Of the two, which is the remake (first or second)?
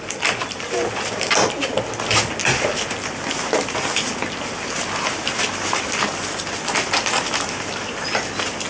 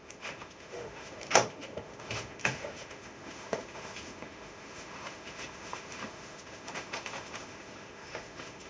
second